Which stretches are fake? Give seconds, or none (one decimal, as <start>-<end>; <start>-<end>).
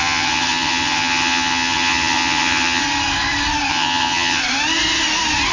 0.0-2.8; 3.7-4.4